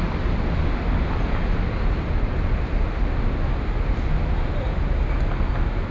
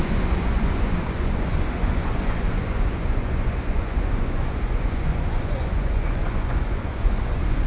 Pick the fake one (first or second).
second